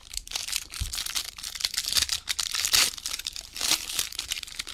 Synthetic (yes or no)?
yes